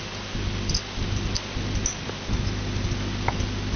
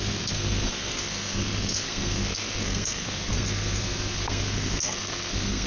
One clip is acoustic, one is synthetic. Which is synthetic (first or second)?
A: second